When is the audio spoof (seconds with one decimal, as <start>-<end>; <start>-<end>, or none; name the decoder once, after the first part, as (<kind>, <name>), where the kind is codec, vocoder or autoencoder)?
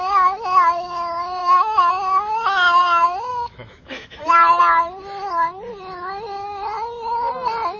1.4-1.9 (autoencoder, DAC-VAE); 3.3-4.6